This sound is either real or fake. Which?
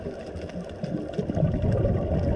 real